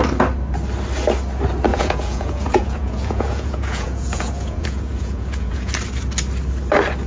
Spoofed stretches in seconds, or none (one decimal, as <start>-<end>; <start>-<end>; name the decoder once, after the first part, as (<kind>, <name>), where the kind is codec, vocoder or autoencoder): 1.7-5.7 (vocoder, Vocos)